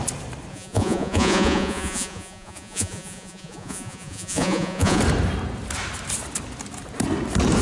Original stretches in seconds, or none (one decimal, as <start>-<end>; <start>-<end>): 0.0-0.5; 5.0-7.6